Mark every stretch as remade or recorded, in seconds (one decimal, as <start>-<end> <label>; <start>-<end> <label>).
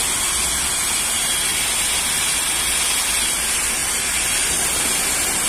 0.0-5.5 recorded